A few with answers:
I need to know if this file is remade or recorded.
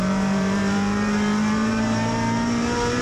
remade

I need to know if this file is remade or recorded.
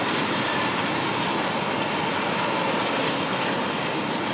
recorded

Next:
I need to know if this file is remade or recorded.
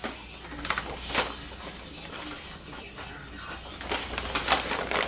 recorded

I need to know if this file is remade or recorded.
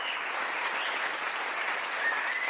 remade